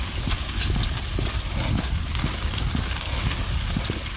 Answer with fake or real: real